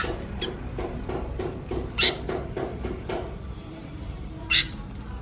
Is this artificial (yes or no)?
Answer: yes